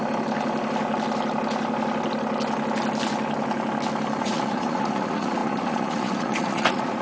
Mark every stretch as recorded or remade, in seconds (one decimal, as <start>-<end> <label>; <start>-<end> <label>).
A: 0.0-4.2 recorded; 4.2-7.0 remade